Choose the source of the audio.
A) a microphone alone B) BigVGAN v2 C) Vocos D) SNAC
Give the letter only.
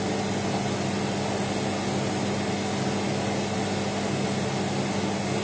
A